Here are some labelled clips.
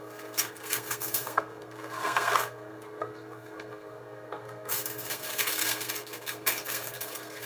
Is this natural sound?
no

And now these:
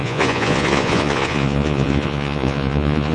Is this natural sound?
no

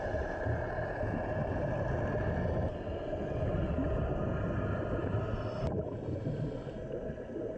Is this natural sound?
yes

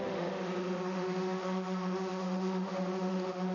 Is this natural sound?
no